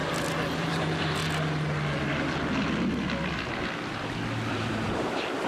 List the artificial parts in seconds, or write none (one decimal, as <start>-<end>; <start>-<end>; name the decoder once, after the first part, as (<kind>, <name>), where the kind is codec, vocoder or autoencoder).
0.6-1.2 (vocoder, BigVGAN v2); 4.5-5.5